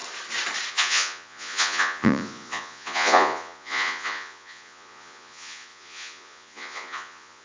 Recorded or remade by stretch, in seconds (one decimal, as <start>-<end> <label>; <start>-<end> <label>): 0.0-0.7 recorded; 0.7-7.4 remade